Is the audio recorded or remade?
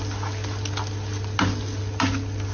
recorded